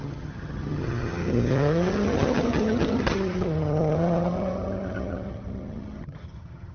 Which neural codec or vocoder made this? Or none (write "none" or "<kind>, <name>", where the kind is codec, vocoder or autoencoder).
vocoder, HiFi-GAN